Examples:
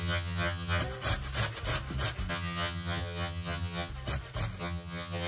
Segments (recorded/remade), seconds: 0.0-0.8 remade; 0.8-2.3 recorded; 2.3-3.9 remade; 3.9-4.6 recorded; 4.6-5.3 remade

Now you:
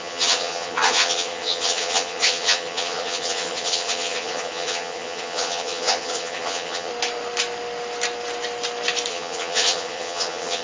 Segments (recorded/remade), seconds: 0.0-6.9 remade; 6.9-9.1 recorded; 9.1-10.6 remade

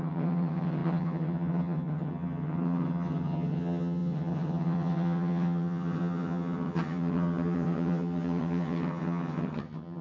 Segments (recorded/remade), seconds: 0.0-10.0 remade

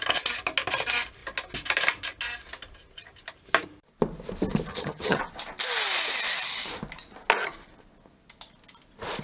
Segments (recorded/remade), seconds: 0.0-4.7 recorded; 4.7-5.2 remade; 5.2-9.2 recorded

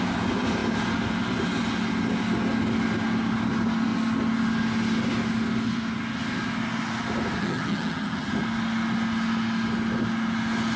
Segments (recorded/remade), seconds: 0.0-7.4 recorded; 7.4-8.3 remade; 8.3-10.8 recorded